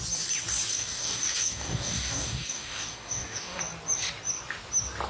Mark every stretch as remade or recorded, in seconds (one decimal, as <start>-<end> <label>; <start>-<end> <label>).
0.0-0.7 recorded; 0.7-3.6 remade; 3.6-5.1 recorded